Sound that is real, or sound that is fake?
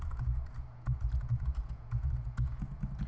fake